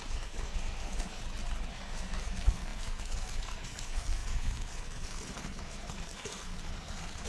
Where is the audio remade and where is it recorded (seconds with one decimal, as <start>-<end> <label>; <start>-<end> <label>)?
0.0-1.2 remade; 1.2-1.7 recorded; 1.7-7.3 remade